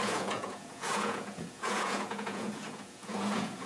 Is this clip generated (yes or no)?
yes